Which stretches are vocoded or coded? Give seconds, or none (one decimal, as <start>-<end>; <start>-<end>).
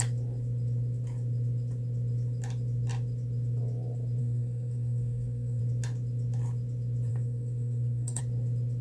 4.2-5.6; 7.1-8.2